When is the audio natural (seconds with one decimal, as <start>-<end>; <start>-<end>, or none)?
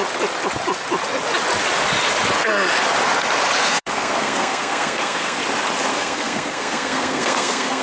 0.0-3.6; 5.4-5.9